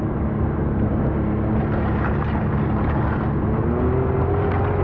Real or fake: real